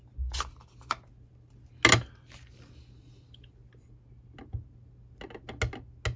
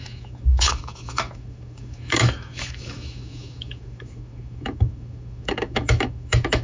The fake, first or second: second